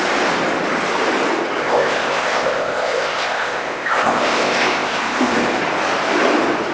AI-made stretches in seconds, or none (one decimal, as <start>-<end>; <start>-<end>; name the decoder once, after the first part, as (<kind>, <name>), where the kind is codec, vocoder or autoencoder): 1.6-5.6 (codec, ZipCodec)